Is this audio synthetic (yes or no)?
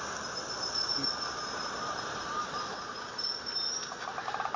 no